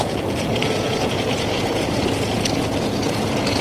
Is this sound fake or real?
fake